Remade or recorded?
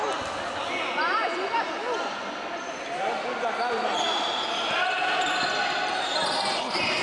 recorded